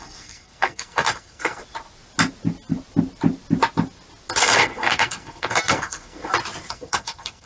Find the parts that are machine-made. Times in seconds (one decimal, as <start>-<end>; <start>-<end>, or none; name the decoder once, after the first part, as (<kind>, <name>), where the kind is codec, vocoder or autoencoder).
0.0-1.6 (codec, SNAC); 4.4-6.2; 6.7-7.5